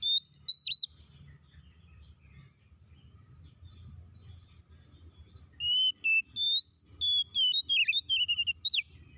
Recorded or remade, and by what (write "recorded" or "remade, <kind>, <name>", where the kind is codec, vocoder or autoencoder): recorded